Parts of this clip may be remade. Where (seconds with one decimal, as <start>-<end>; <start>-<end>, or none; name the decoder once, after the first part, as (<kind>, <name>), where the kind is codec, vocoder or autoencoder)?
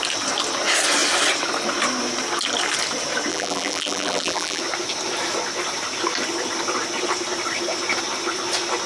3.3-4.6 (vocoder, BigVGAN v2)